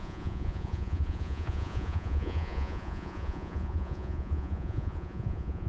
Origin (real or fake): fake